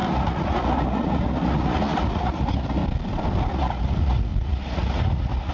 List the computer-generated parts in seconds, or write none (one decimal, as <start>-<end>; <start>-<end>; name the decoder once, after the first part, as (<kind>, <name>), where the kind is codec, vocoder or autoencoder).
0.0-2.8 (vocoder, Vocos); 3.5-5.5